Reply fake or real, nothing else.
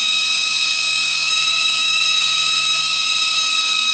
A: fake